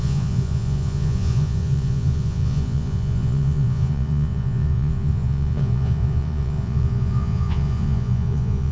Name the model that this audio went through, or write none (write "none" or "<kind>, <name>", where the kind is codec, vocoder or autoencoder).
vocoder, Vocos